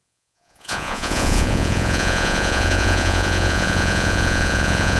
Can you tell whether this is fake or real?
fake